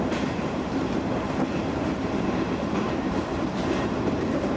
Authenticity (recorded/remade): remade